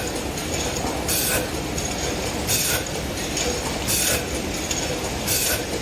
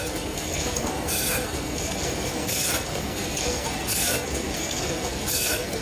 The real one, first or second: first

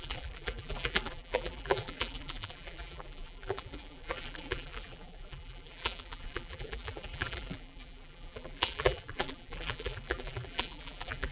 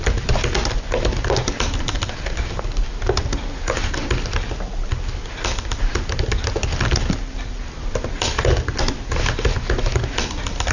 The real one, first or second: second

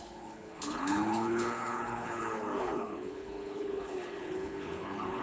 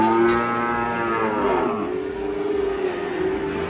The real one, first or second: second